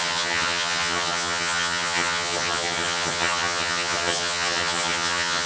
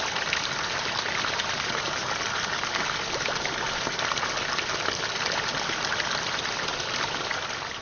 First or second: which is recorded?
second